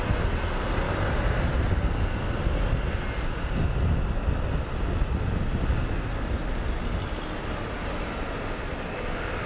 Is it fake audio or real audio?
real